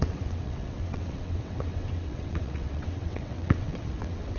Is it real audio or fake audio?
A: fake